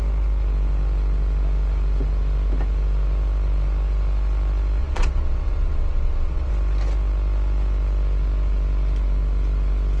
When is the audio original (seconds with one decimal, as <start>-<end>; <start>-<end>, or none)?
0.0-4.8; 6.5-10.0